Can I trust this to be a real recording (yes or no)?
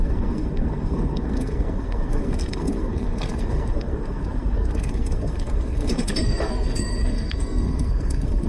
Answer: no